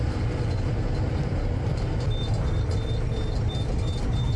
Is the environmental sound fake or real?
real